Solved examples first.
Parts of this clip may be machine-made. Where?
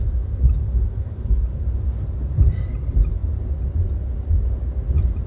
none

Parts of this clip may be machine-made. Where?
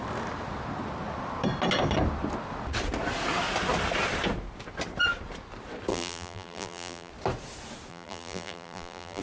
5.9-7.1; 7.9-9.2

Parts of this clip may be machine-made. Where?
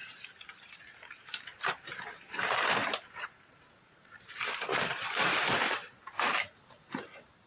0.0-7.5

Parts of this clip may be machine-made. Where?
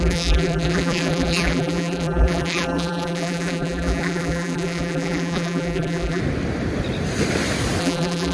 0.0-6.2; 7.8-8.3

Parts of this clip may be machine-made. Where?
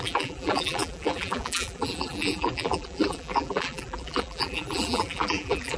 0.0-5.8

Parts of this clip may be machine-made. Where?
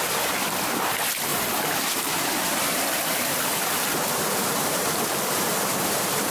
1.3-5.1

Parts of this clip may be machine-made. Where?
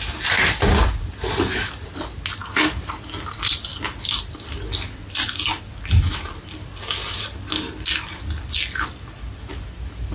2.4-3.5